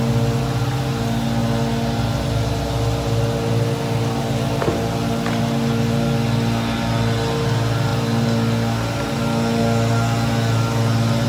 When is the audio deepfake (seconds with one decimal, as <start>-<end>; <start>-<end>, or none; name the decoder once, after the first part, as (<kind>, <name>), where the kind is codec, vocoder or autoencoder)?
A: none